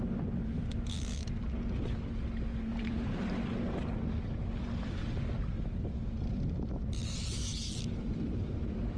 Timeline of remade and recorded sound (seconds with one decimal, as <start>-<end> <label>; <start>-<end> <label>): 0.0-2.7 recorded; 2.7-3.2 remade; 3.2-5.4 recorded; 5.4-9.0 remade